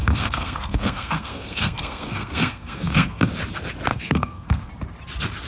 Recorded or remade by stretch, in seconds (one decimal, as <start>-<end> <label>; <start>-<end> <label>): 0.0-3.3 remade; 3.3-3.9 recorded; 3.9-4.7 remade; 4.7-5.5 recorded